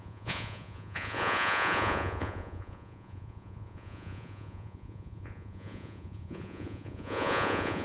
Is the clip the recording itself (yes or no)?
no